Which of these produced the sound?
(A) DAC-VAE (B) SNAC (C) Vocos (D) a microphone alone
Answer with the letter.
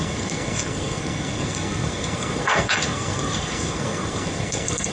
B